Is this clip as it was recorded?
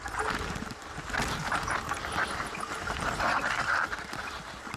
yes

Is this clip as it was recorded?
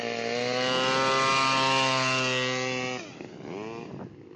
yes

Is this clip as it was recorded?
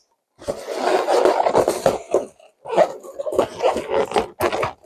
yes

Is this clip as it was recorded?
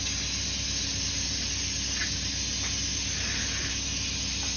yes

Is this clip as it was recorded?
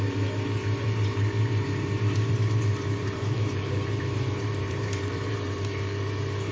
no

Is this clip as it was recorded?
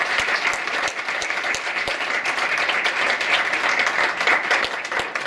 no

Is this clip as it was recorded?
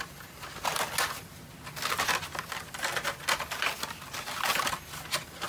yes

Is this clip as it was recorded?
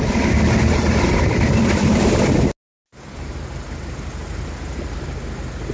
yes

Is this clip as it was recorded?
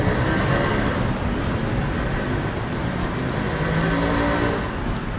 yes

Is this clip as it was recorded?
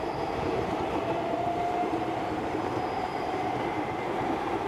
no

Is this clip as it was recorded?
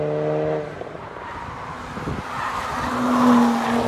yes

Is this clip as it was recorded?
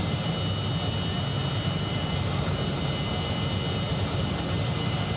yes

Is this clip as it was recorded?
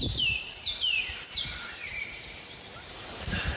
no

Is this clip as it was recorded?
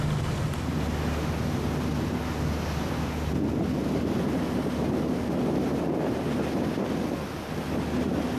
yes